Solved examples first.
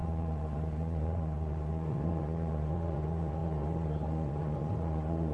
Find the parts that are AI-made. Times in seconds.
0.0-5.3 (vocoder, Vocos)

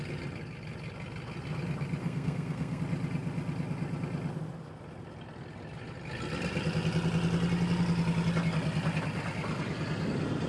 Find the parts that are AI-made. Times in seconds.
2.0-2.8 (codec, SNAC)

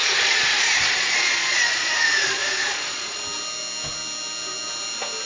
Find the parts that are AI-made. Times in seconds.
0.0-3.2 (vocoder, Vocos)

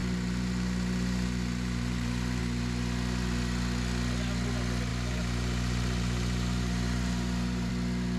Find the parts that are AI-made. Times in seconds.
0.0-2.4 (vocoder, BigVGAN v2); 4.9-7.7

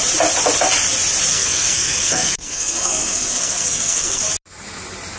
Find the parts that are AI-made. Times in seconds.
1.3-4.2 (codec, SNAC)